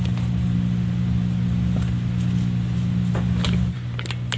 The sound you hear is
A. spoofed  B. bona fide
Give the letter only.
B